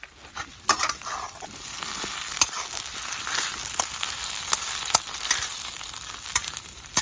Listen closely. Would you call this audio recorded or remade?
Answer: recorded